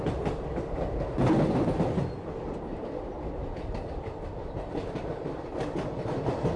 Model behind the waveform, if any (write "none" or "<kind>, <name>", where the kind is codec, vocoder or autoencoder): none